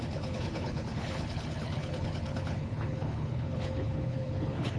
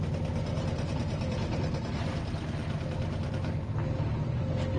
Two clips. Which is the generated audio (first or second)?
first